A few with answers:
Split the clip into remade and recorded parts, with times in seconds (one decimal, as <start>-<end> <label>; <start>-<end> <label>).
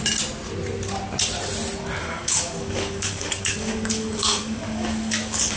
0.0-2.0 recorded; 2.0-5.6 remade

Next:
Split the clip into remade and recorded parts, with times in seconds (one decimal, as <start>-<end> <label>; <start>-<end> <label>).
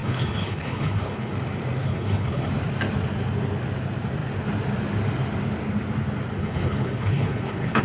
0.0-1.3 remade; 1.3-1.8 recorded; 1.8-2.5 remade; 2.5-6.4 recorded; 6.4-7.8 remade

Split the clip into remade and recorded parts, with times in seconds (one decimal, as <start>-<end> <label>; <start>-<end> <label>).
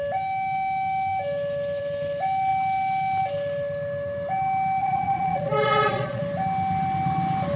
0.0-4.8 recorded; 4.8-6.2 remade; 6.2-7.6 recorded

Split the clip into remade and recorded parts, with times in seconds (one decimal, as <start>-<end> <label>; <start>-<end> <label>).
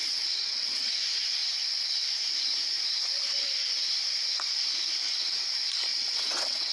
0.0-0.8 remade; 0.8-5.9 recorded; 5.9-6.7 remade